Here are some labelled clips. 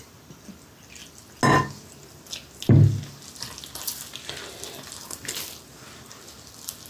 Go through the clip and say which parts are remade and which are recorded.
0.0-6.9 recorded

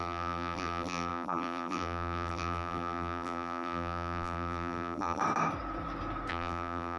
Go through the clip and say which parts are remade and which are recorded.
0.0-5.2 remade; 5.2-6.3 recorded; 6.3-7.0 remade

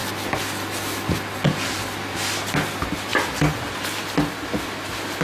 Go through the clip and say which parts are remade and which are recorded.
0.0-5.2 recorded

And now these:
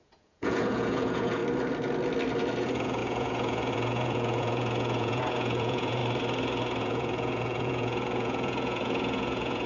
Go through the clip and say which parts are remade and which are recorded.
0.0-1.4 remade; 1.4-2.6 recorded; 2.6-6.0 remade; 6.0-6.8 recorded; 6.8-9.7 remade

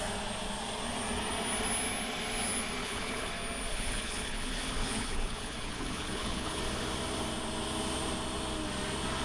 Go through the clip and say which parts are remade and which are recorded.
0.0-2.8 recorded; 2.8-3.3 remade; 3.3-3.7 recorded; 3.7-6.6 remade; 6.6-9.2 recorded

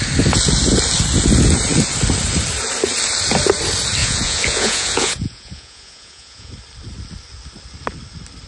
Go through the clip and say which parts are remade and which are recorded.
0.0-4.0 recorded; 4.0-6.5 remade; 6.5-8.5 recorded

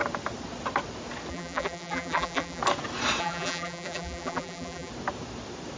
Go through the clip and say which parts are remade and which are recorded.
0.0-1.3 recorded; 1.3-2.6 remade; 2.6-3.2 recorded; 3.2-4.9 remade; 4.9-5.8 recorded